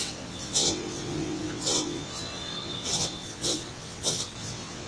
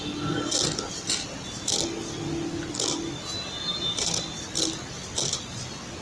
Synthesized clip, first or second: first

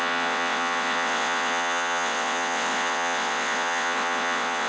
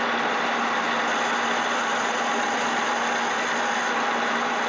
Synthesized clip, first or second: first